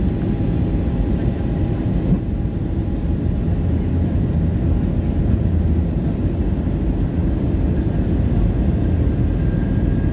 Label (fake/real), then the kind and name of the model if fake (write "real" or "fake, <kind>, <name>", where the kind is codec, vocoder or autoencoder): real